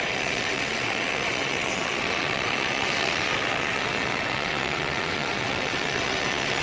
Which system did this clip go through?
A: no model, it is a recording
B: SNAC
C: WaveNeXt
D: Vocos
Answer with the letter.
C